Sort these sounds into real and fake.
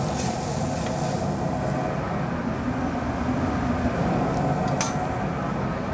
real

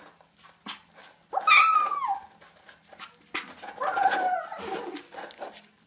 real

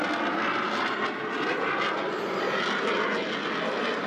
real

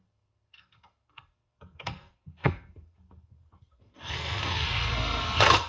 fake